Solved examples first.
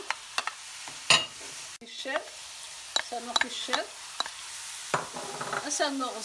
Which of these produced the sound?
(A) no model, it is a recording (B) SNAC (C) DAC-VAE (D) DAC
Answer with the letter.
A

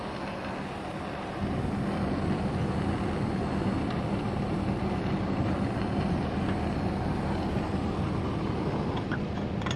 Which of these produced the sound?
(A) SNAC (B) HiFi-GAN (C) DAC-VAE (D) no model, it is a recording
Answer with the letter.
D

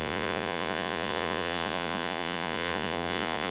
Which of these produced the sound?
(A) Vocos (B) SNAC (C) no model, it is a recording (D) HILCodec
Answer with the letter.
A